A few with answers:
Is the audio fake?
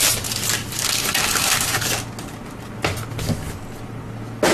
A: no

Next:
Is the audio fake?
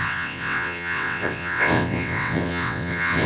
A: yes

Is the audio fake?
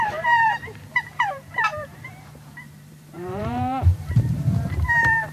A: yes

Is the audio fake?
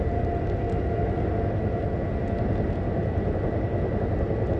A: no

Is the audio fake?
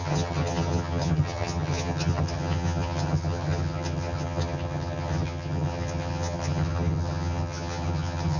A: yes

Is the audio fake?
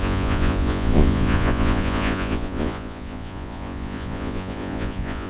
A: yes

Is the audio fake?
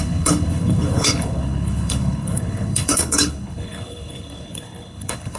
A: yes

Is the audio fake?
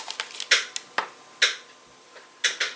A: no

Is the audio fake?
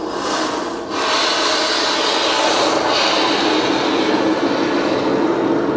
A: no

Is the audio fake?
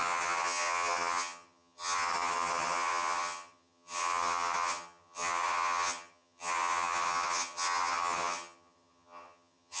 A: yes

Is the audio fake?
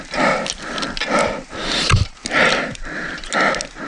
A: no